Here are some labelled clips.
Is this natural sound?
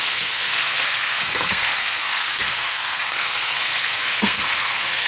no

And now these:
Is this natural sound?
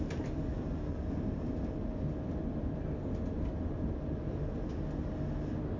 yes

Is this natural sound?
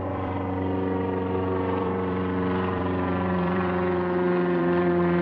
no